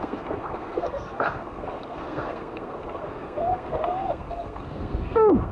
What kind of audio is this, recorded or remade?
remade